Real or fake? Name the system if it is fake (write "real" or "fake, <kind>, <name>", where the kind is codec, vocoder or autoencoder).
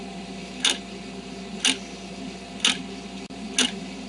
real